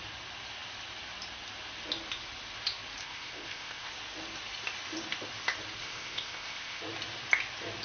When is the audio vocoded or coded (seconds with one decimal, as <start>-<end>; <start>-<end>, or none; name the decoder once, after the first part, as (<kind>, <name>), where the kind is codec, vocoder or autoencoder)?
3.0-3.9 (codec, ZipCodec); 5.8-6.8